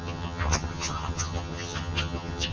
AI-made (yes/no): yes